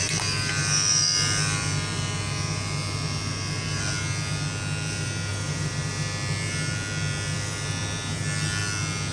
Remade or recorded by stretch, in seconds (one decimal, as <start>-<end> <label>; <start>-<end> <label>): 0.0-3.8 remade; 3.8-5.3 recorded; 5.3-5.9 remade; 5.9-9.1 recorded